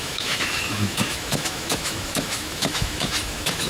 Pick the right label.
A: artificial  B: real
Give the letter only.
A